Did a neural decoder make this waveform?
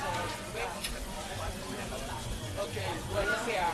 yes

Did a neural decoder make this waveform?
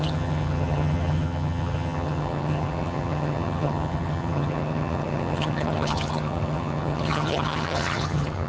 yes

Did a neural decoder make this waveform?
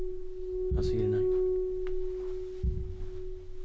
no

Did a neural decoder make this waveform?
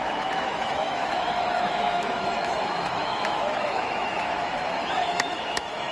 yes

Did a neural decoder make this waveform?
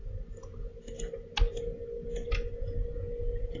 no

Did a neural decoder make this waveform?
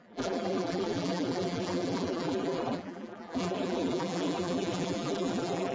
yes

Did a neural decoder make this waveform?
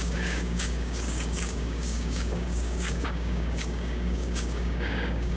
yes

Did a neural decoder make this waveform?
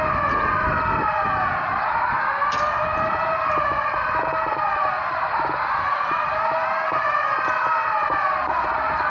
no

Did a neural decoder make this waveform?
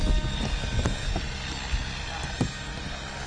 no